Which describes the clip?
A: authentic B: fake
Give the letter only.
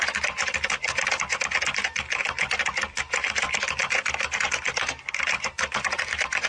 A